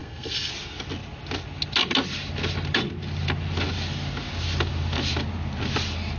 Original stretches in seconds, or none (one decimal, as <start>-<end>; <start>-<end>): 0.5-6.2